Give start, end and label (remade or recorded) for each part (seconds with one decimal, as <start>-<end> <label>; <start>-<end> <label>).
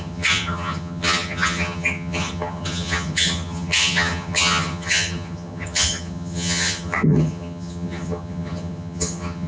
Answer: 0.0-9.5 remade